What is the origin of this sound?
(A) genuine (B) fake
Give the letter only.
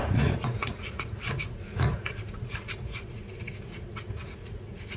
B